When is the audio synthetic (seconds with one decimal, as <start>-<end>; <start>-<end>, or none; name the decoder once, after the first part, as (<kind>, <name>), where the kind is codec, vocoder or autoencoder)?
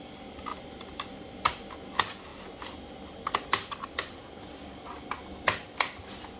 0.5-1.7 (vocoder, BigVGAN v2)